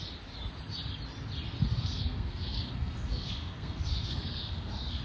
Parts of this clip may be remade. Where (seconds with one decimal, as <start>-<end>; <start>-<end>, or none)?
1.7-5.0